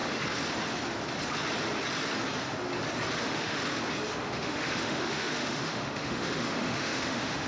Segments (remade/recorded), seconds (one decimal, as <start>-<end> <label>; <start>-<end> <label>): 0.0-3.2 recorded; 3.2-3.6 remade; 3.6-4.2 recorded; 4.2-7.5 remade